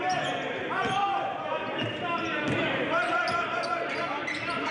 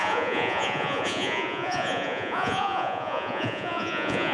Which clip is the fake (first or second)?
second